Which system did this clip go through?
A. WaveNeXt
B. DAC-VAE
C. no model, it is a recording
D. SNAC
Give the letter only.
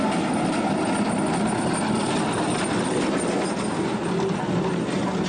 C